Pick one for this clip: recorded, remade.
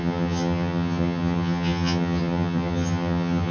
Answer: remade